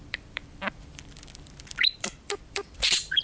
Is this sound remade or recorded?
remade